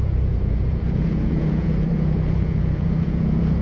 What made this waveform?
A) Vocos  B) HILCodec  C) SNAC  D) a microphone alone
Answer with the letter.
A